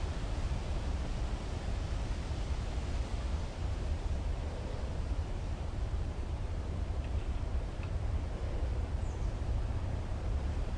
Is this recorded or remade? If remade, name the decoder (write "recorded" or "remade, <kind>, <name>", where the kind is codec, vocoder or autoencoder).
remade, vocoder, BigVGAN v2